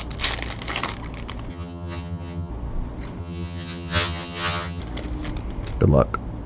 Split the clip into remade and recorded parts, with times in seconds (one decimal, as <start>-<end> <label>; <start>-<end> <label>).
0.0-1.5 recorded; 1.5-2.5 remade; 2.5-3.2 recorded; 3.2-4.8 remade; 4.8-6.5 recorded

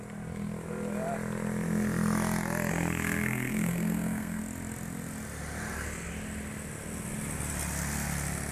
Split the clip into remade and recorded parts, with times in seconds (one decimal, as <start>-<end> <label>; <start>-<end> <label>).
0.0-2.7 recorded; 2.7-4.4 remade; 4.4-8.5 recorded

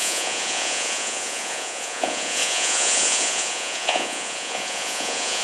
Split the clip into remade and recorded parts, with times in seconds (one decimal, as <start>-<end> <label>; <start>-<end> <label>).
0.0-5.4 remade

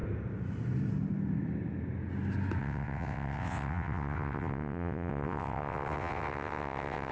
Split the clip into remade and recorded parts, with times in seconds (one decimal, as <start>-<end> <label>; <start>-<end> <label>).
0.0-2.6 recorded; 2.6-7.1 remade

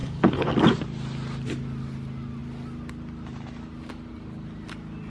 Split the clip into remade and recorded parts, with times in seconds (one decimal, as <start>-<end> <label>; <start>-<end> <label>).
0.0-0.5 remade; 0.5-5.1 recorded

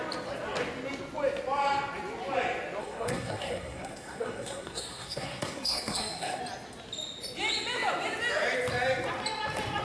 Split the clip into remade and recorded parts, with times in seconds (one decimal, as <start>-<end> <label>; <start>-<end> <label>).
0.0-2.8 recorded; 2.8-6.4 remade; 6.4-9.8 recorded